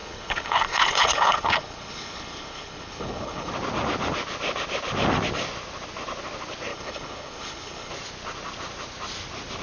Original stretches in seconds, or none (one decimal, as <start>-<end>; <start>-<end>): 3.5-6.7; 7.9-9.6